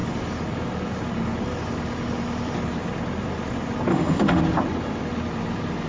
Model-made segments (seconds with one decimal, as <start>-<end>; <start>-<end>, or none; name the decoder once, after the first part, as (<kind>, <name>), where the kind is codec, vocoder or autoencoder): 3.9-4.4 (autoencoder, DAC-VAE)